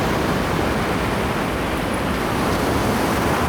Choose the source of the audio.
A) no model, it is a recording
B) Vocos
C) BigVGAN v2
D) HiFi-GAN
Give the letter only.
A